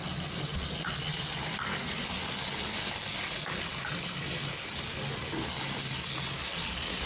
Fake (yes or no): no